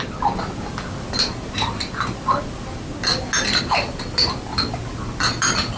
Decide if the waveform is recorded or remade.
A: recorded